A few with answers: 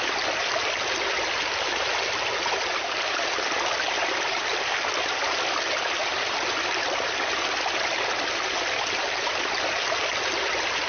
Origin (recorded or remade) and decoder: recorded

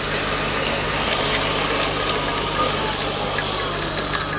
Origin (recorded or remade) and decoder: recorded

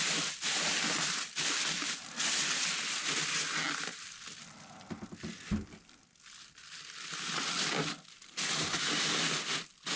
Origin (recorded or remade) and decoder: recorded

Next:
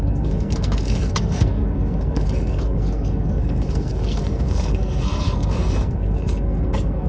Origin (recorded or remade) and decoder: remade, codec, SNAC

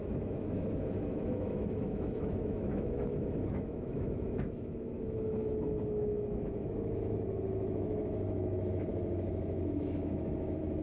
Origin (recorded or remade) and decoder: remade, autoencoder, DAC-VAE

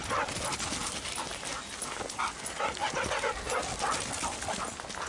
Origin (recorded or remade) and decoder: recorded